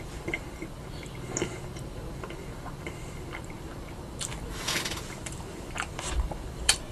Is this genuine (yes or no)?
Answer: no